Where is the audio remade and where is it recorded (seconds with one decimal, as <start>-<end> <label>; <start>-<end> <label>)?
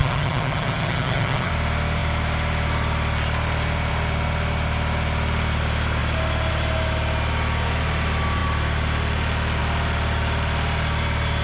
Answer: 0.0-1.5 remade; 1.5-11.4 recorded